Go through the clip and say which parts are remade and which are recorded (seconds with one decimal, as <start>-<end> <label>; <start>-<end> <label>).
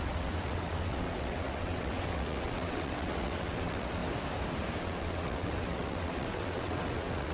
0.0-4.0 remade; 4.0-4.8 recorded; 4.8-7.3 remade